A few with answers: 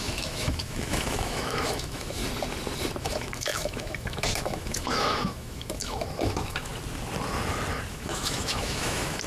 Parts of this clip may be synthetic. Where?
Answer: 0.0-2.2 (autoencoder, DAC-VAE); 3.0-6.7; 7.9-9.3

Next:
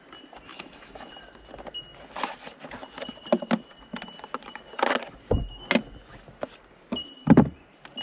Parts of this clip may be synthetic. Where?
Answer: 0.5-1.1 (autoencoder, DAC-VAE)

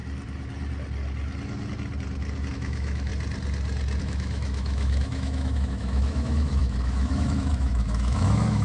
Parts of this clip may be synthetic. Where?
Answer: 2.5-3.1 (autoencoder, DAC-VAE); 4.0-8.6

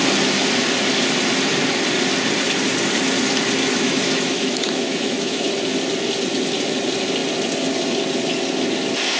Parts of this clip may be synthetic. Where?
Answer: 3.6-5.5 (autoencoder, DAC-VAE)